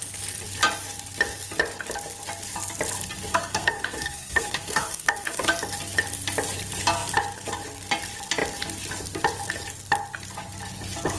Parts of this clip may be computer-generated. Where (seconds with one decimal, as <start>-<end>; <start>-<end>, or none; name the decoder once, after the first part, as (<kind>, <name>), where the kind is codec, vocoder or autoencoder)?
3.3-5.5 (codec, SNAC)